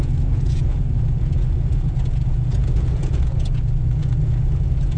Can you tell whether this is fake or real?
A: fake